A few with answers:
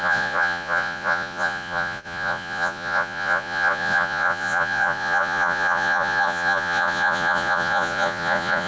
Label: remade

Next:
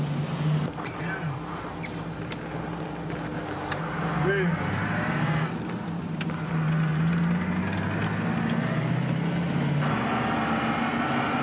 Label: recorded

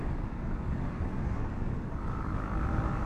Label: remade